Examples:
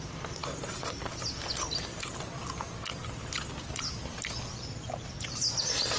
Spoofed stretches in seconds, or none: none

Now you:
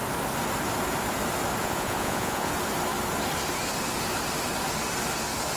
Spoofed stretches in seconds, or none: 1.6-2.5 (vocoder, Vocos)

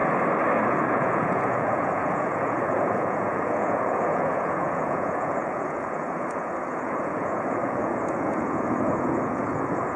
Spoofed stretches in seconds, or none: 0.7-10.0 (vocoder, Vocos)

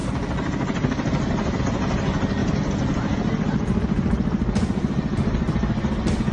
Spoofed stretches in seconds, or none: none

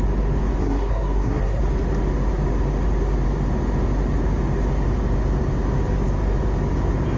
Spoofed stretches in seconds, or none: 0.6-1.6 (codec, SNAC)

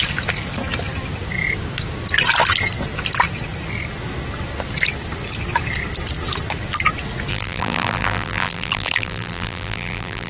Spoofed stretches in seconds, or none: 7.3-10.3 (vocoder, BigVGAN v2)

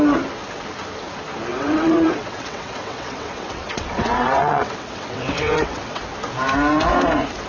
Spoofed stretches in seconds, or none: 1.5-6.0 (vocoder, WaveNeXt)